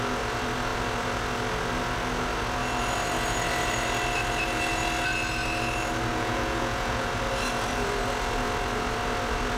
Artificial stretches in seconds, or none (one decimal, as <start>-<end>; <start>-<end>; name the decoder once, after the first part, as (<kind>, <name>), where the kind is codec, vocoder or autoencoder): 6.1-7.1 (vocoder, Vocos)